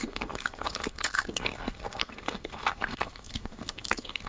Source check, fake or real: fake